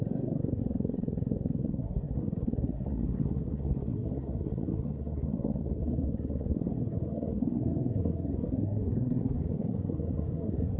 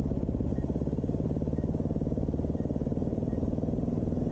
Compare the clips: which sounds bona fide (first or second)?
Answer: second